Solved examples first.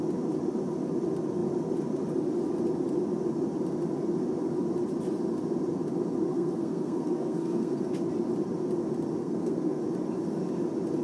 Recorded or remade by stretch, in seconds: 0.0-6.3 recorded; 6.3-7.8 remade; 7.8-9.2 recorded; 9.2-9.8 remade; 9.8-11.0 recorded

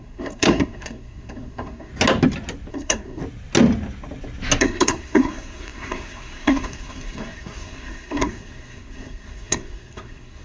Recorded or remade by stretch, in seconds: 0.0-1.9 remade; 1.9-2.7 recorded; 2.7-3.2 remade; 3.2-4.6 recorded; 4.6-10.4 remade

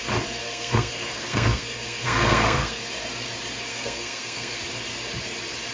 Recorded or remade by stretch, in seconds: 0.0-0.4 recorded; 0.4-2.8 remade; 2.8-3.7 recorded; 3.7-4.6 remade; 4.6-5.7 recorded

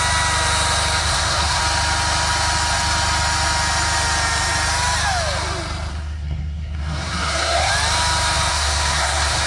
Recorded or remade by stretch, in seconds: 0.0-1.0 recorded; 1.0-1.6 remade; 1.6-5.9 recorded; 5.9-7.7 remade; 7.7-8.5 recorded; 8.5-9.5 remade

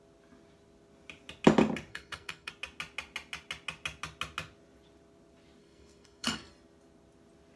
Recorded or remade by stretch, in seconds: 0.0-1.9 recorded; 1.9-2.5 remade; 2.5-5.6 recorded; 5.6-6.5 remade; 6.5-7.6 recorded